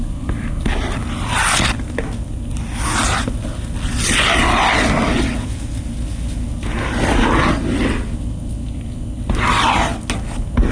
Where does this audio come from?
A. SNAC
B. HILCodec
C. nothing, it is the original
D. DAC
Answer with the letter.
C